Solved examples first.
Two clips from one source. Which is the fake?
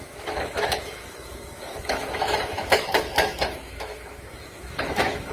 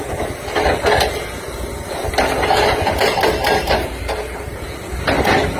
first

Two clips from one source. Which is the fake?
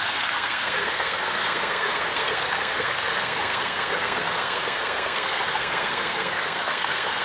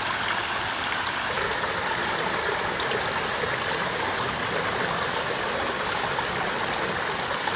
first